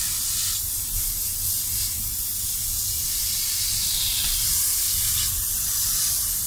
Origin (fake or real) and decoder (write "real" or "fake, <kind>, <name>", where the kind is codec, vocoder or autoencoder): real